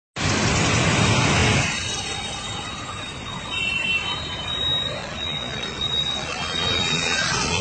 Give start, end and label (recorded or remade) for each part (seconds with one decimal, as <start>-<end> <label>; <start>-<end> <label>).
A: 0.0-5.0 recorded; 5.0-7.6 remade

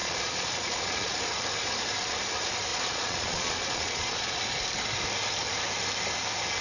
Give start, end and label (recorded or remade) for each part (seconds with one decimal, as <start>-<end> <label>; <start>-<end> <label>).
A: 0.0-1.1 remade; 1.1-2.7 recorded; 2.7-4.4 remade; 4.4-6.6 recorded

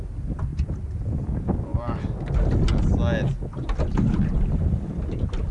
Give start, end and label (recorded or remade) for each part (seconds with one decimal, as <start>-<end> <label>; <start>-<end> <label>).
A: 0.0-0.5 recorded; 0.5-1.1 remade; 1.1-5.5 recorded

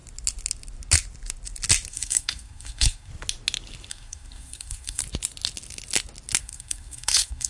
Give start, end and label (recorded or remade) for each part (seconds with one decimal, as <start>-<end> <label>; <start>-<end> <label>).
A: 0.0-1.9 recorded; 1.9-3.1 remade; 3.1-3.9 recorded; 3.9-5.0 remade; 5.0-6.4 recorded; 6.4-7.5 remade

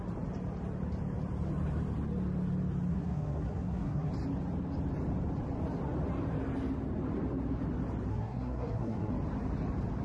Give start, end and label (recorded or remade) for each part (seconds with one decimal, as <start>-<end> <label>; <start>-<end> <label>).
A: 0.0-2.9 recorded; 2.9-4.1 remade; 4.1-8.1 recorded; 8.1-9.1 remade; 9.1-10.0 recorded

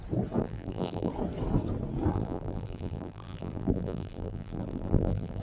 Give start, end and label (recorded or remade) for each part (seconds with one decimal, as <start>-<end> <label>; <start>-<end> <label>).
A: 0.0-0.4 recorded; 0.4-1.1 remade; 1.1-2.1 recorded; 2.1-5.4 remade

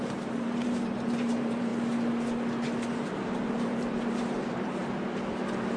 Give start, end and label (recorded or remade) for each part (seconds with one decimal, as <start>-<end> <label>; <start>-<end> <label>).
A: 0.0-1.7 remade; 1.7-3.1 recorded; 3.1-4.8 remade; 4.8-5.3 recorded; 5.3-5.8 remade